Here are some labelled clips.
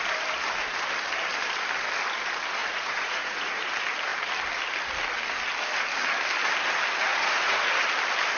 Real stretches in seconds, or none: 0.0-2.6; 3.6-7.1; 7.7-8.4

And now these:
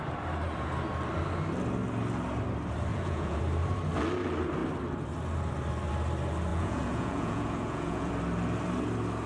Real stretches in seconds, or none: 0.0-2.9; 3.4-6.5; 8.1-9.3

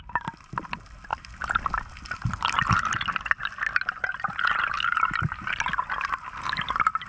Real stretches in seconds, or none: 0.0-7.1

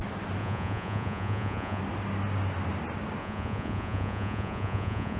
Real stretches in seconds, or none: 0.0-0.4; 1.8-3.2

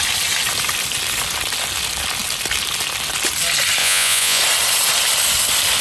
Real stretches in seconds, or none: 0.0-3.8; 4.4-5.8

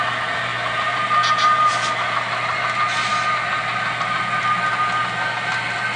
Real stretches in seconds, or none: 0.0-6.0